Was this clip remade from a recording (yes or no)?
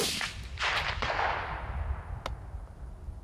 no